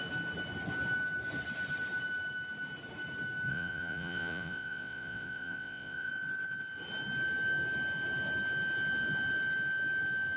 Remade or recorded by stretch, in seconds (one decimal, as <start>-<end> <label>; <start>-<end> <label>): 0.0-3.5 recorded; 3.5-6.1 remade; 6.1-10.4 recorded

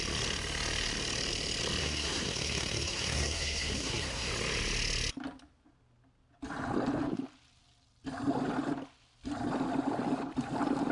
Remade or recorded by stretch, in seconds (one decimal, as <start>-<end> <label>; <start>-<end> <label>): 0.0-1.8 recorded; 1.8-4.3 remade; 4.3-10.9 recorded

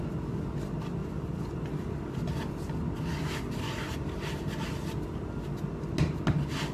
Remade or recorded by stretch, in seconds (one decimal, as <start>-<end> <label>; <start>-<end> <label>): 0.0-1.0 recorded; 1.0-2.3 remade; 2.3-6.7 recorded

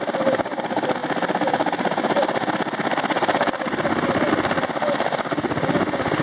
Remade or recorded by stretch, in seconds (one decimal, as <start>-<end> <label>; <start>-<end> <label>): 0.0-6.2 recorded

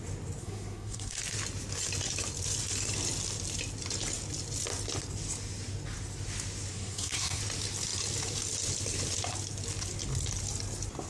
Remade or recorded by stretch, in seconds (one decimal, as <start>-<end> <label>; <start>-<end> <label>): 0.0-0.4 recorded; 0.4-1.2 remade; 1.2-6.7 recorded; 6.7-7.4 remade; 7.4-11.1 recorded

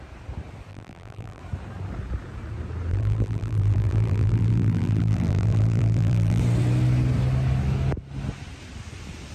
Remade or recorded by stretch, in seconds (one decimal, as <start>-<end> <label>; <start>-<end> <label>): 0.0-0.7 recorded; 0.7-1.4 remade; 1.4-2.9 recorded; 2.9-6.4 remade; 6.4-9.3 recorded